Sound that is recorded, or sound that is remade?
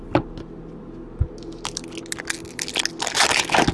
recorded